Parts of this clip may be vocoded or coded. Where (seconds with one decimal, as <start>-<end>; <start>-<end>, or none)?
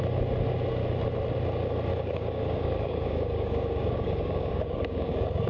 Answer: 1.9-5.5